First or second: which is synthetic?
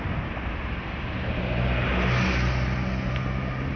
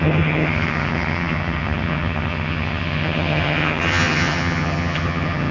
second